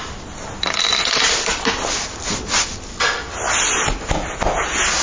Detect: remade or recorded recorded